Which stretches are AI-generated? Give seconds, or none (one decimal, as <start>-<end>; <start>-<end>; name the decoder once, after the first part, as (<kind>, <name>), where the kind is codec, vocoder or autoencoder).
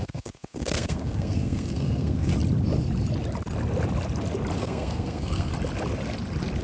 0.0-2.3 (codec, SNAC); 4.6-5.5